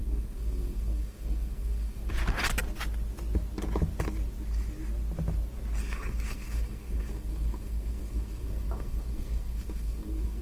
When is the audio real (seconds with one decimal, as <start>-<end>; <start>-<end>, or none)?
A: 2.1-5.8